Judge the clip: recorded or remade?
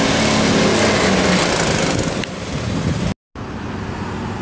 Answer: recorded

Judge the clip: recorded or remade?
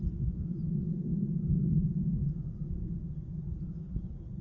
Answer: recorded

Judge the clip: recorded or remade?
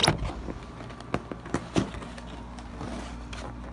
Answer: recorded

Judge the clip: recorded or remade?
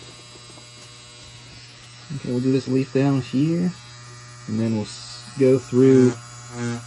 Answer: recorded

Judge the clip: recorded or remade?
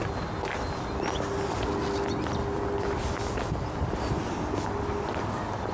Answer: recorded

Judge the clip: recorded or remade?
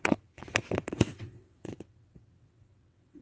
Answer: remade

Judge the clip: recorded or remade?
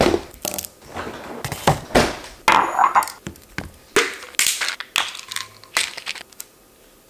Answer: recorded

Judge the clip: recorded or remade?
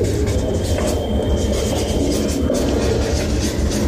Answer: recorded